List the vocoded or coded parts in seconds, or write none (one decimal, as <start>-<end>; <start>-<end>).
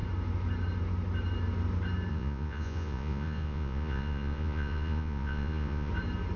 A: 2.1-5.9